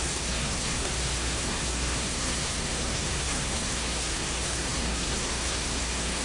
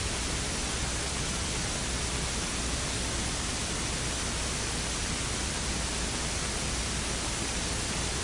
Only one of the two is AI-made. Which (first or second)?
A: first